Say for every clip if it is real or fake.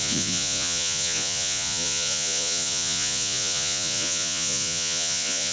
fake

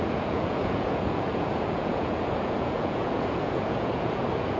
fake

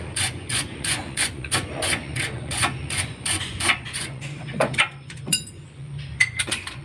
fake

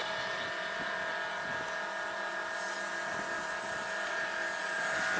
real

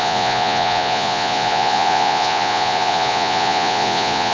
fake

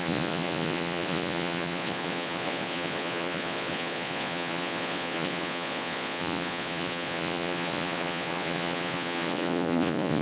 fake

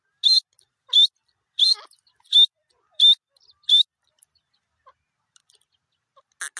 real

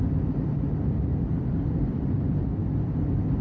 real